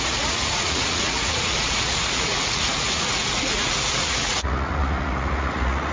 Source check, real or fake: fake